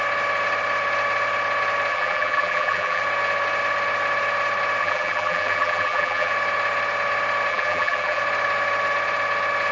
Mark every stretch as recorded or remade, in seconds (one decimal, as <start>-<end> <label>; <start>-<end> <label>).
0.0-1.9 recorded; 1.9-3.0 remade; 3.0-4.8 recorded; 4.8-6.3 remade; 6.3-7.5 recorded; 7.5-8.2 remade; 8.2-9.7 recorded